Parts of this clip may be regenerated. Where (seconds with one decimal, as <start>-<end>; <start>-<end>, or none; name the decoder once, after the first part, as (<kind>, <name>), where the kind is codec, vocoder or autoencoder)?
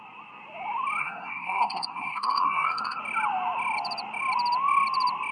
1.0-3.0 (codec, SNAC)